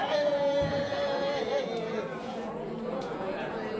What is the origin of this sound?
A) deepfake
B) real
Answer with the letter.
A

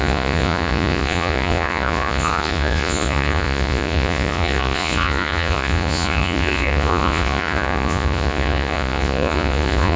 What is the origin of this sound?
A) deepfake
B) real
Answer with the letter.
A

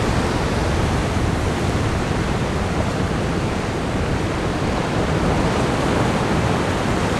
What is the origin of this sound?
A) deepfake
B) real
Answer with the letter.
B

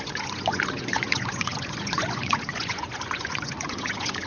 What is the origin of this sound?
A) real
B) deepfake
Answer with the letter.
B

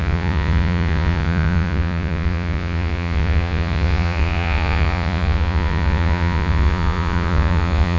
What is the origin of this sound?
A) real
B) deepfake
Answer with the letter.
B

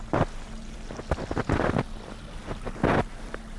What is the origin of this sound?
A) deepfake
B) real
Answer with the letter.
B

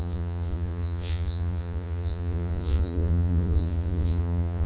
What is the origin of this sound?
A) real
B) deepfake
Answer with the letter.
B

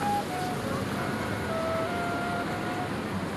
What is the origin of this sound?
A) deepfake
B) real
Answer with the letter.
B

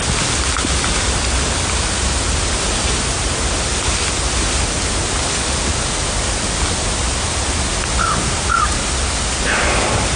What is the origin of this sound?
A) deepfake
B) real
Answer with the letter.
B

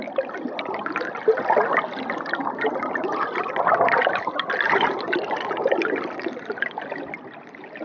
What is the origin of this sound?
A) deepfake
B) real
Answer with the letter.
B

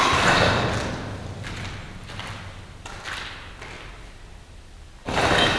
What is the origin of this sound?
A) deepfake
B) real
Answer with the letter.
B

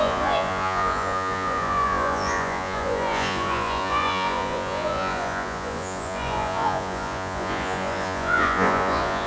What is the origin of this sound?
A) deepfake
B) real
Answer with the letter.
A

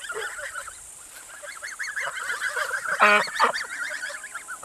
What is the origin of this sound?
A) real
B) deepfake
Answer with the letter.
A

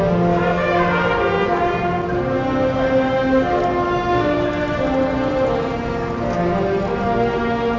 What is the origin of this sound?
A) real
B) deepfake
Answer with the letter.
A